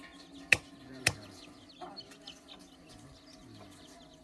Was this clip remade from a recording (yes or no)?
no